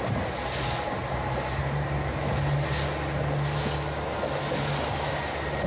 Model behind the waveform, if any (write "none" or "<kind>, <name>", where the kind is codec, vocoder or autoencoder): none